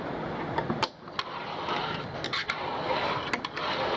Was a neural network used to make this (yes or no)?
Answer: no